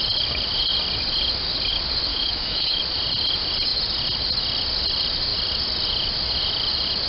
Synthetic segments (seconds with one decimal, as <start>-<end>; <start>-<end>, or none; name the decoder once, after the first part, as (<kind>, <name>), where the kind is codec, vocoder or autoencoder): 2.1-2.8 (autoencoder, DAC-VAE)